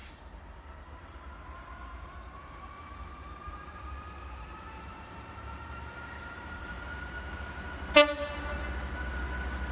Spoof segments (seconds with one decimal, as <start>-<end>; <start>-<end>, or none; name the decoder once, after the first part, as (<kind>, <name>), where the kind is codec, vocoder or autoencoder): 0.0-1.0 (vocoder, BigVGAN v2); 2.0-6.7